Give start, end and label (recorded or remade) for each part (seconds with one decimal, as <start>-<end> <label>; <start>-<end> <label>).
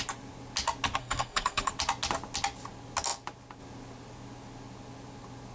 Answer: 0.0-1.0 recorded; 1.0-1.7 remade; 1.7-5.5 recorded